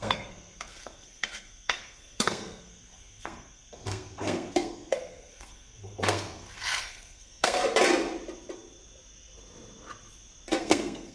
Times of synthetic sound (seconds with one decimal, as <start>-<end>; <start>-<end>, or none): 0.0-7.6; 10.6-11.1